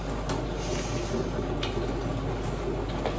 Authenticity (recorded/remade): recorded